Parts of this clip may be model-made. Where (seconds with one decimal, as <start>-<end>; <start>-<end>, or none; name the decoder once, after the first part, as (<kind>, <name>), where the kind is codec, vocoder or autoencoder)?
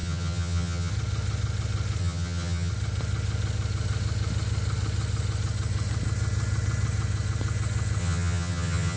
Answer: 0.0-0.9 (vocoder, HiFi-GAN); 2.0-2.7; 8.0-9.0